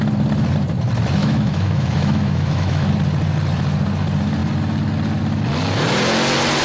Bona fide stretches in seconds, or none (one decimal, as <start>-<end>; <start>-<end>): 0.0-1.2; 2.9-6.6